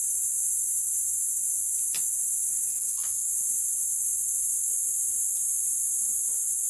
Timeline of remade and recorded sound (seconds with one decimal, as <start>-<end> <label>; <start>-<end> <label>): 0.0-2.7 recorded; 2.7-3.3 remade; 3.3-6.7 recorded